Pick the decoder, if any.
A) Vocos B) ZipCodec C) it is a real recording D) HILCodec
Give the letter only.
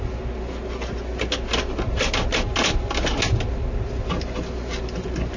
C